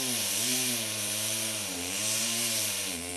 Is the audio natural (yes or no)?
no